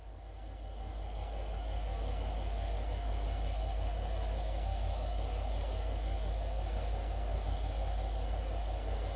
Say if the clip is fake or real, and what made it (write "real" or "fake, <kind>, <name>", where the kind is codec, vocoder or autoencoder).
fake, codec, SNAC